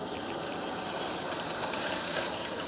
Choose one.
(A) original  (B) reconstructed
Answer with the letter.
B